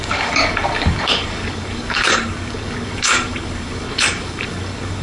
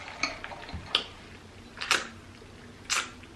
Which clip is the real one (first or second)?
second